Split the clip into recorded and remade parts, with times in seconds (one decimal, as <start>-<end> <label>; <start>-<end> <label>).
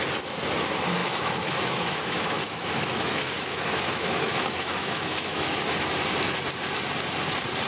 0.0-1.0 recorded; 1.0-5.6 remade; 5.6-7.7 recorded